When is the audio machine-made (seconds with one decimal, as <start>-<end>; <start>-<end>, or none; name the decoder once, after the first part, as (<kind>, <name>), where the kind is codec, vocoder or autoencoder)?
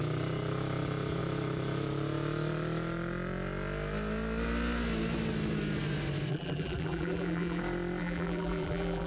6.3-7.6 (vocoder, BigVGAN v2); 8.0-9.1